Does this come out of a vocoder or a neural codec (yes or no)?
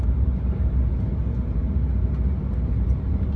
yes